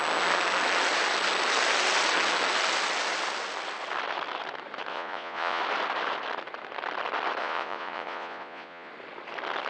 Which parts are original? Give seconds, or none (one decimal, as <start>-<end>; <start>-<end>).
0.0-4.9; 5.6-7.4; 8.9-9.7